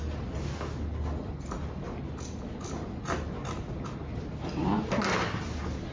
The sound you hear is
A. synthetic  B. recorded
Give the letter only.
B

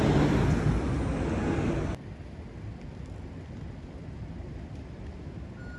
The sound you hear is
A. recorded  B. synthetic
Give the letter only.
A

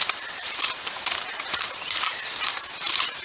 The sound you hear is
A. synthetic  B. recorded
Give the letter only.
A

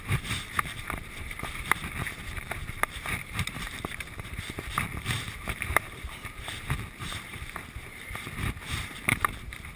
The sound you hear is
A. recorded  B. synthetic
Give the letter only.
B